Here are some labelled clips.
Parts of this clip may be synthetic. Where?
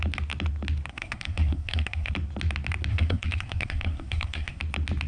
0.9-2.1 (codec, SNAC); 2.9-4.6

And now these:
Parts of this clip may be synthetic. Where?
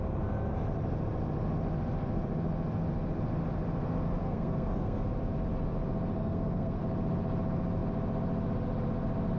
4.2-5.0 (codec, SNAC); 6.2-6.8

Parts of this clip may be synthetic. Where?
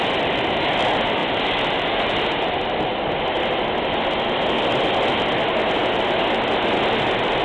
none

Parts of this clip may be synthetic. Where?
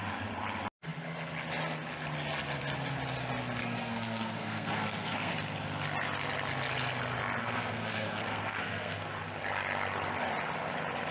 3.6-5.3 (codec, SNAC); 7.4-9.1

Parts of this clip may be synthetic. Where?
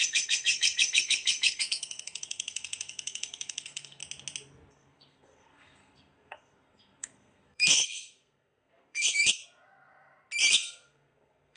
0.0-4.0 (codec, SNAC); 4.7-9.4; 10.5-11.6